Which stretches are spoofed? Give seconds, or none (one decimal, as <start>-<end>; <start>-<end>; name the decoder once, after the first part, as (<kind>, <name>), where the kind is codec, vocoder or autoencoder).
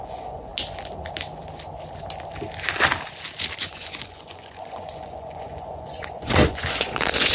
0.0-0.5 (vocoder, Vocos); 3.7-7.3